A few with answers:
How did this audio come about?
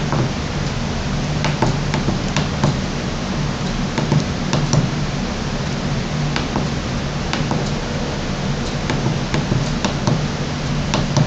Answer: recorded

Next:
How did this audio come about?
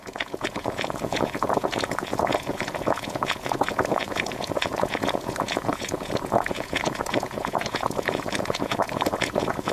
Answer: remade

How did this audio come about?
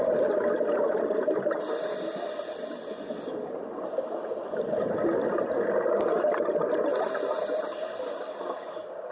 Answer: recorded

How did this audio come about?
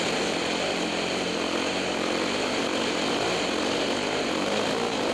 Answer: recorded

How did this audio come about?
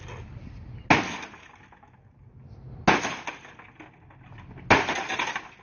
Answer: recorded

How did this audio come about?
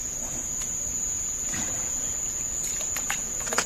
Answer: remade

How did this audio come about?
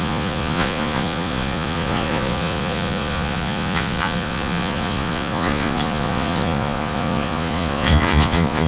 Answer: remade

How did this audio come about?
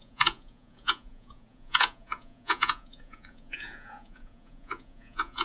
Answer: remade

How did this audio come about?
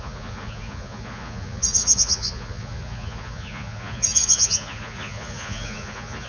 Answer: remade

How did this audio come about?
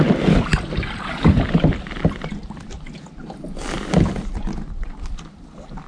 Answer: recorded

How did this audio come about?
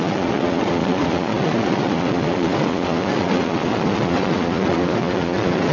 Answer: remade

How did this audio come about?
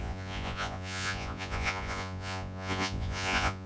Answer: remade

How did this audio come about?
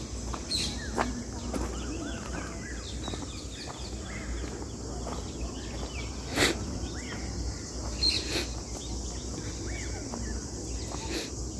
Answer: recorded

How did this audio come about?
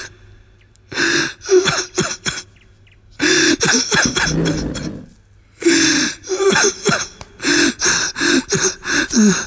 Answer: recorded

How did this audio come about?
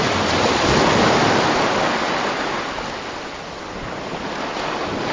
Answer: recorded